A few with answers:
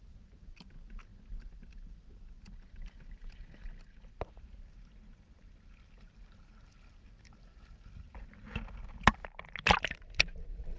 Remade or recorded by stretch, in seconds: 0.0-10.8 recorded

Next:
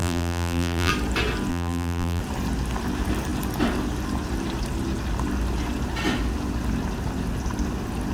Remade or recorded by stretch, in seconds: 0.0-0.9 remade; 0.9-1.5 recorded; 1.5-2.2 remade; 2.2-8.1 recorded